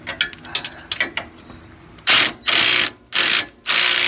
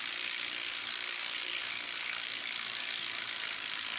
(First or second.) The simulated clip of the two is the second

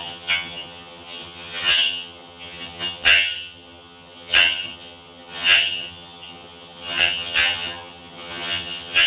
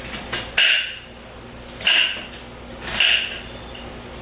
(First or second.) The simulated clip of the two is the first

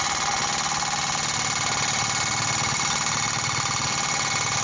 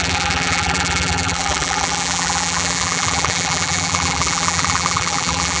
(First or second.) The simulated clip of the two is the second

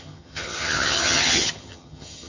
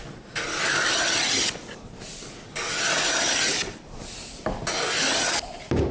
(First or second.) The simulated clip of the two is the first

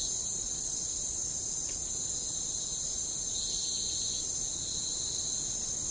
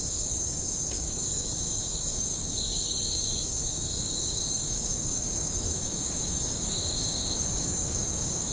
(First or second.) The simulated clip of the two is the second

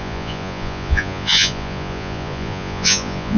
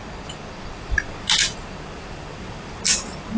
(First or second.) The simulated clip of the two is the first